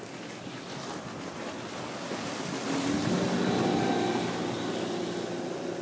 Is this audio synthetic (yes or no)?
no